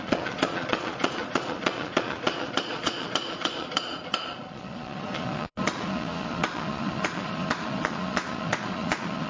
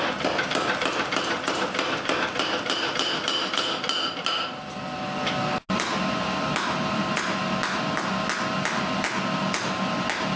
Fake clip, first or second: first